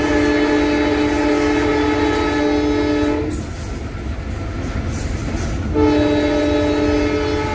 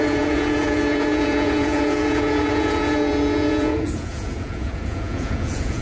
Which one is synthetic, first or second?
second